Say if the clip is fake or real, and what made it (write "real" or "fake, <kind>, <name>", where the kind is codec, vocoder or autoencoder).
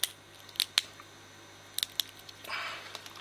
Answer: real